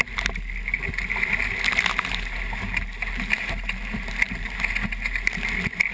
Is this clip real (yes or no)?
yes